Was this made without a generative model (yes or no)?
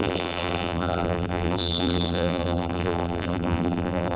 no